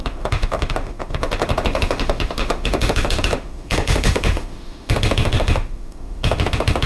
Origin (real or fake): fake